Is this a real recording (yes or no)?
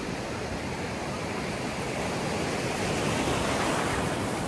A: yes